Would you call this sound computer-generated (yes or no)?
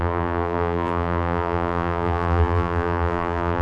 yes